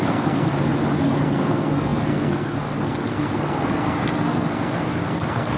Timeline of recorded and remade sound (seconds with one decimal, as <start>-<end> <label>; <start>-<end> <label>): 0.0-0.5 remade; 0.5-1.0 recorded; 1.0-5.6 remade